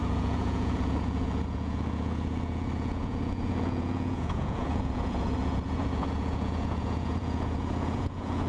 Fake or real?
fake